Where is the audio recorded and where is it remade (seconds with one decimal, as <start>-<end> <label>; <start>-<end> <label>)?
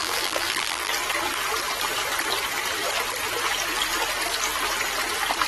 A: 0.0-0.9 remade; 0.9-5.5 recorded